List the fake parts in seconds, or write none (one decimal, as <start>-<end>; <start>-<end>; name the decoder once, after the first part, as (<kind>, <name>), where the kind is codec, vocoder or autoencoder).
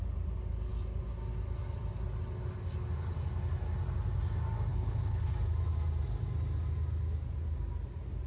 4.7-5.3 (codec, HILCodec)